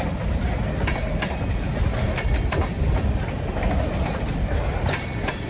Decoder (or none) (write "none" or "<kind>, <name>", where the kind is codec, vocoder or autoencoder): none